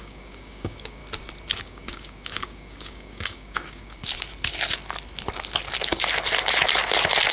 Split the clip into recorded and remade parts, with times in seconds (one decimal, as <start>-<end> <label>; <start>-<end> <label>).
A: 0.0-1.0 remade; 1.0-1.6 recorded; 1.6-4.0 remade; 4.0-7.3 recorded